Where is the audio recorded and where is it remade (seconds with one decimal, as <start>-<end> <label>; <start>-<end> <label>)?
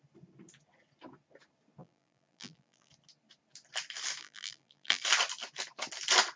0.0-1.8 recorded; 1.8-2.9 remade; 2.9-4.2 recorded; 4.2-5.0 remade; 5.0-6.4 recorded